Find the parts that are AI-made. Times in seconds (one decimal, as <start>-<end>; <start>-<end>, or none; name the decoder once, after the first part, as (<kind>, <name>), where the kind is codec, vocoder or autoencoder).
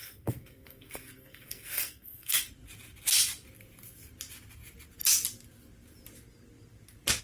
0.0-2.5 (codec, SNAC)